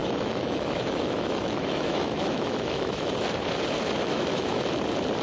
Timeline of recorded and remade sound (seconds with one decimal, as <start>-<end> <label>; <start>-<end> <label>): 0.0-3.1 remade; 3.1-4.1 recorded; 4.1-4.6 remade; 4.6-5.2 recorded